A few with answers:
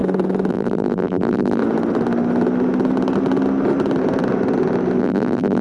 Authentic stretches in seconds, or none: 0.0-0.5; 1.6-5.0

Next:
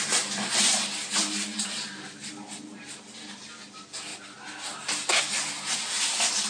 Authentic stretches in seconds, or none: 0.0-1.2; 2.3-6.5

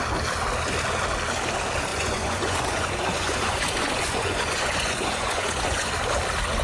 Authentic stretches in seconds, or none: 0.0-1.9; 5.9-6.6

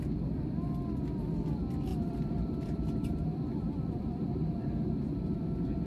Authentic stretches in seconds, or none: 0.0-1.9; 5.4-5.9